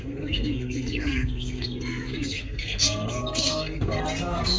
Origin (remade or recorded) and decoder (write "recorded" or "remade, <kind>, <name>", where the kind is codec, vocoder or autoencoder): remade, codec, SNAC